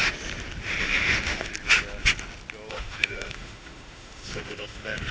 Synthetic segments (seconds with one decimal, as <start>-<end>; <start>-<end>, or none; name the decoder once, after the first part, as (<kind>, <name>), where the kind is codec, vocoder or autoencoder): 0.8-1.5 (autoencoder, DAC-VAE); 2.7-5.1